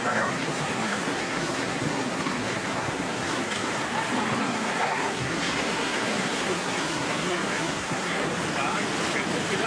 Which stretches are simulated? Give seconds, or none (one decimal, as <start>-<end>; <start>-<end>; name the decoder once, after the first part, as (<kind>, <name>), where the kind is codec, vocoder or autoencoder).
0.0-3.7 (codec, SNAC); 4.4-8.3